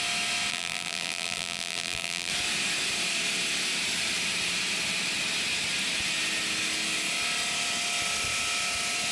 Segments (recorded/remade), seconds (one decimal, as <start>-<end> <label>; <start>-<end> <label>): 0.0-0.5 recorded; 0.5-2.3 remade; 2.3-9.1 recorded